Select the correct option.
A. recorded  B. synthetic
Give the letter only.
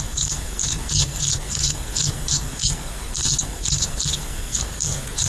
B